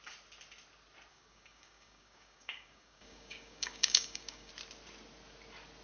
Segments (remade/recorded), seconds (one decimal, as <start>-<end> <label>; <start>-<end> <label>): 0.0-1.1 recorded; 1.1-4.5 remade; 4.5-5.8 recorded

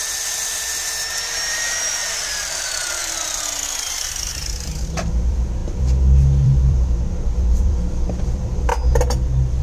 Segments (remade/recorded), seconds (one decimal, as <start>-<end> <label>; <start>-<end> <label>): 0.0-8.7 remade; 8.7-9.6 recorded

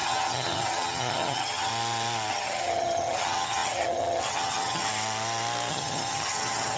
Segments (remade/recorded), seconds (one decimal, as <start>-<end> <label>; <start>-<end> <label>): 0.0-1.7 remade; 1.7-2.3 recorded; 2.3-4.9 remade; 4.9-5.7 recorded; 5.7-6.8 remade

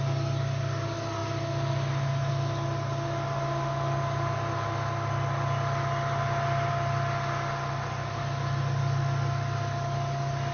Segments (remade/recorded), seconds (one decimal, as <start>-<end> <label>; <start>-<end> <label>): 0.0-10.5 recorded

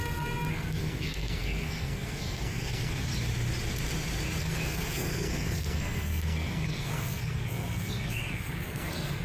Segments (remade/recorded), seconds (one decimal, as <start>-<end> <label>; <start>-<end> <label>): 0.0-3.1 remade; 3.1-4.4 recorded; 4.4-9.2 remade

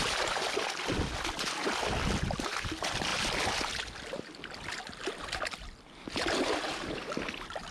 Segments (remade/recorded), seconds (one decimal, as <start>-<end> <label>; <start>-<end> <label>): 0.0-7.7 recorded

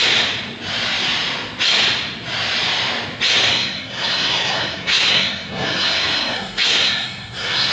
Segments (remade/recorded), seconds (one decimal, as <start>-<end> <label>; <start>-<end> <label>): 0.0-3.5 recorded; 3.5-7.7 remade